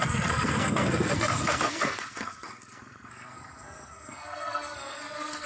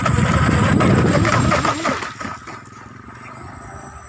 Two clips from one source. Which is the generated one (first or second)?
first